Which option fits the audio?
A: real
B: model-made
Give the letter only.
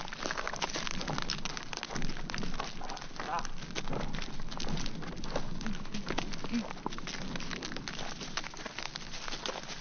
A